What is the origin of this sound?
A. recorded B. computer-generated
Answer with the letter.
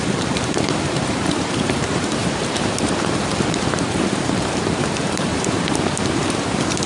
B